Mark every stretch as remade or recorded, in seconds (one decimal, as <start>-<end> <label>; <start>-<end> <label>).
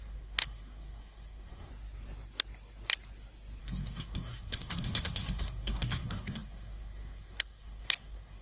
0.0-1.7 remade; 1.7-3.6 recorded; 3.6-8.4 remade